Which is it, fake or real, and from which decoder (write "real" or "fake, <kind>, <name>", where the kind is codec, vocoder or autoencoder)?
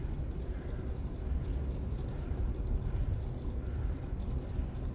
real